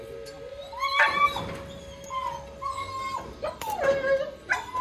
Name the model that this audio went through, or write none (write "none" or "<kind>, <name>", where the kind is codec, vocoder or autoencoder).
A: none